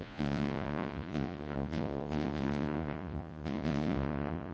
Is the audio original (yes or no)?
no